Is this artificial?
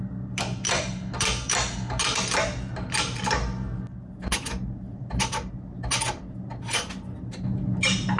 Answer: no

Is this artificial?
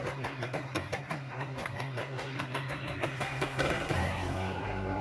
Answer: yes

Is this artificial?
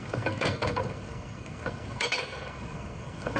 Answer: yes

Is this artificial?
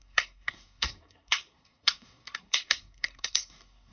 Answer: yes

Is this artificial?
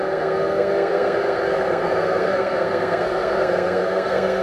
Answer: yes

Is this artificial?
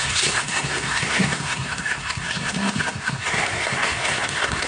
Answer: yes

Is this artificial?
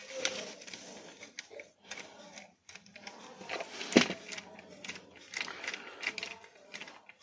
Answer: no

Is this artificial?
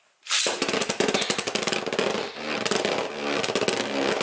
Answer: no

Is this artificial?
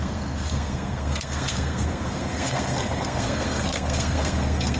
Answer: yes